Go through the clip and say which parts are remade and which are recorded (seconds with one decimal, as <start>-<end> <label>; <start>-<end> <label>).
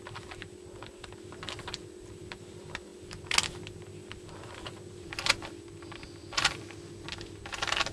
0.0-7.9 recorded